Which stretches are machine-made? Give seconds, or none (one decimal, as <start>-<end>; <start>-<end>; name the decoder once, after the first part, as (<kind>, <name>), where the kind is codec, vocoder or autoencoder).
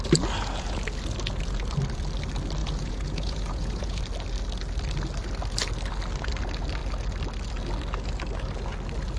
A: 2.6-4.0 (vocoder, Vocos)